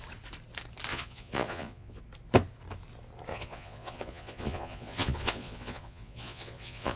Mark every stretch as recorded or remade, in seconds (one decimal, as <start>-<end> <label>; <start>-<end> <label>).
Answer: 0.0-0.9 recorded; 0.9-2.0 remade; 2.0-3.3 recorded; 3.3-7.0 remade

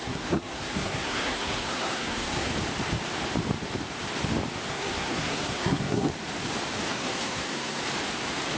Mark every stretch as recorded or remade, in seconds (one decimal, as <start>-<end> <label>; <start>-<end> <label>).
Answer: 0.0-2.5 remade; 2.5-4.7 recorded; 4.7-6.1 remade; 6.1-6.9 recorded; 6.9-7.8 remade; 7.8-8.6 recorded